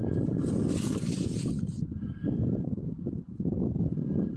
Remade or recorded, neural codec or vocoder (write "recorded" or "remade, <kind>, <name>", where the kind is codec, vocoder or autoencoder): recorded